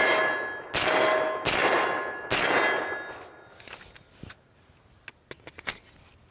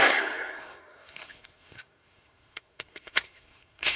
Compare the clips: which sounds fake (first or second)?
second